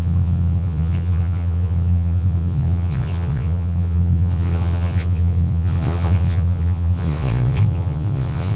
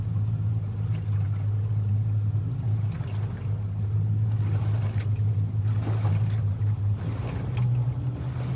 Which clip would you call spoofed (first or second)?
first